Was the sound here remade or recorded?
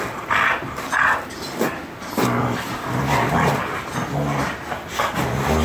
recorded